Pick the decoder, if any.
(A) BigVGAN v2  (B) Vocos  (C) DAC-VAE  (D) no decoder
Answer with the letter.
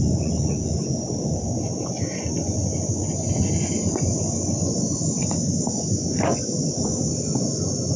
B